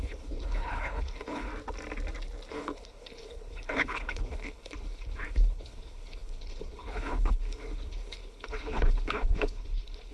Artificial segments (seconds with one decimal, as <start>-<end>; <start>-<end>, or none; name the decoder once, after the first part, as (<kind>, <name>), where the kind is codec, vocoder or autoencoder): 0.0-1.5 (codec, HILCodec); 2.5-10.1